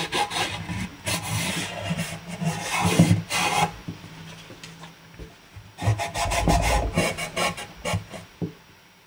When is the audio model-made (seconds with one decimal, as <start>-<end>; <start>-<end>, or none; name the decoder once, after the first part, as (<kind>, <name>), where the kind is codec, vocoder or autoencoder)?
none